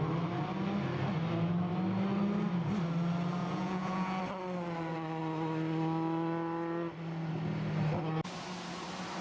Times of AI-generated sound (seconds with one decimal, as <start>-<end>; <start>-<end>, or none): 3.4-4.2